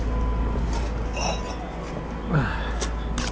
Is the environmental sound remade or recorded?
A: recorded